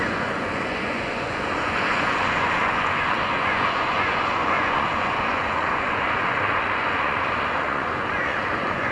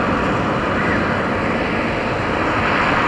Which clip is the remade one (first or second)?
first